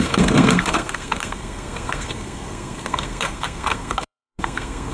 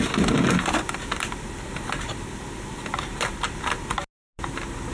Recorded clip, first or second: second